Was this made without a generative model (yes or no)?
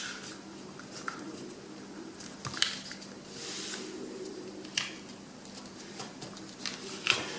yes